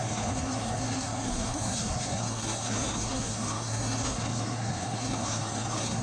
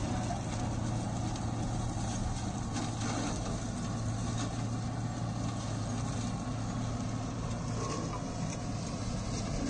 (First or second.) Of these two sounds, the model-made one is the first